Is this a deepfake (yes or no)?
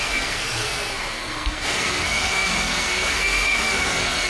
yes